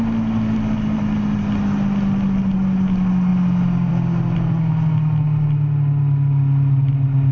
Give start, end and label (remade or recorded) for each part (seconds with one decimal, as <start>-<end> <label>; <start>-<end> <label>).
0.0-7.3 recorded